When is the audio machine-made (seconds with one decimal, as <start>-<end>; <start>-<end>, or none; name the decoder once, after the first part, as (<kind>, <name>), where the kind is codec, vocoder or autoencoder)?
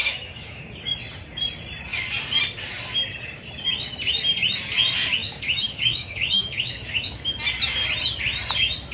0.0-0.6 (autoencoder, DAC-VAE); 5.2-7.2